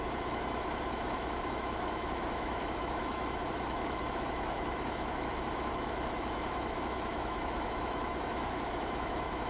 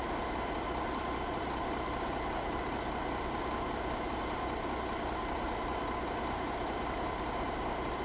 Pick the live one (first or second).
second